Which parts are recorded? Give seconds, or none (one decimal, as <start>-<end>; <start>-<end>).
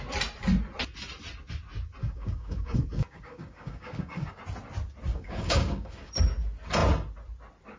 0.0-2.0; 4.4-5.1; 6.1-7.8